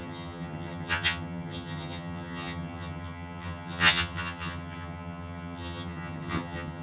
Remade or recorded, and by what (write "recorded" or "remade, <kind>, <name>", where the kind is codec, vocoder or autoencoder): remade, vocoder, HiFi-GAN